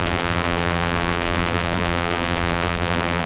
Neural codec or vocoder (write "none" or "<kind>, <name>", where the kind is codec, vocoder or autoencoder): vocoder, BigVGAN v2